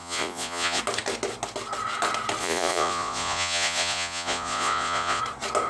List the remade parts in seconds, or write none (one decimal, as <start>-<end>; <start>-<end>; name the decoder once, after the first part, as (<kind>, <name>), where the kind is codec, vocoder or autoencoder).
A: 0.0-0.8 (vocoder, Vocos); 2.4-5.2